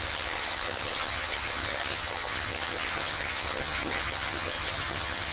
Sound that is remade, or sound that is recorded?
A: remade